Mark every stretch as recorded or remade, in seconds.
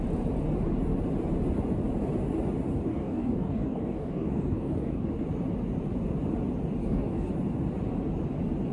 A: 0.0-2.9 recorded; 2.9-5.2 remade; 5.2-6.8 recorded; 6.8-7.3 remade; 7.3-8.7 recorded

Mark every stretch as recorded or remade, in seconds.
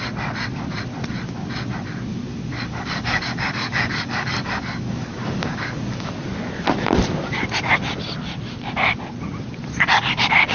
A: 0.0-2.1 recorded; 2.1-6.1 remade; 6.1-10.5 recorded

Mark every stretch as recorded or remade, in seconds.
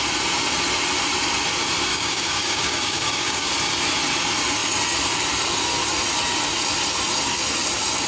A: 0.0-1.9 recorded; 1.9-3.5 remade; 3.5-8.1 recorded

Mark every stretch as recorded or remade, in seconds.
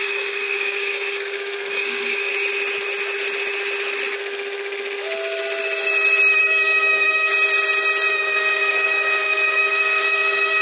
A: 0.0-2.3 remade; 2.3-6.4 recorded; 6.4-7.3 remade; 7.3-8.1 recorded; 8.1-10.6 remade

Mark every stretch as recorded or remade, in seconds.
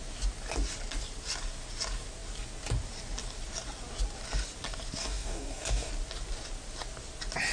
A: 0.0-5.0 recorded; 5.0-5.9 remade; 5.9-7.5 recorded